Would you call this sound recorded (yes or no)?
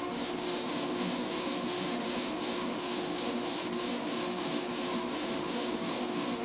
no